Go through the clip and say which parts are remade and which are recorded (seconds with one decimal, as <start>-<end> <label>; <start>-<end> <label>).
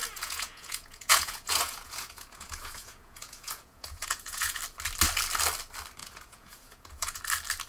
0.0-4.6 remade; 4.6-6.0 recorded; 6.0-7.2 remade; 7.2-7.7 recorded